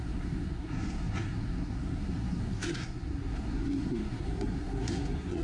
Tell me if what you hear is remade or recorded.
remade